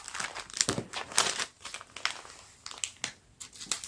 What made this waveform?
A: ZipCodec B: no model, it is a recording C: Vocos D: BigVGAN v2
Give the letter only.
B